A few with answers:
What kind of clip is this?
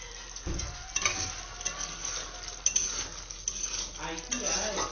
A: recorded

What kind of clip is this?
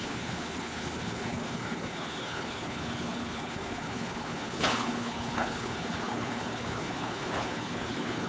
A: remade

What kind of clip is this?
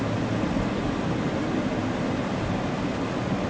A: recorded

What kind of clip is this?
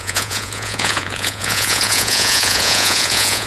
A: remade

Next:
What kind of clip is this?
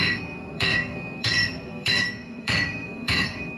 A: remade